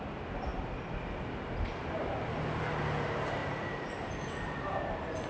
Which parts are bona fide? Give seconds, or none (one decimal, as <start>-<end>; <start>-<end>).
0.0-3.4; 3.9-5.3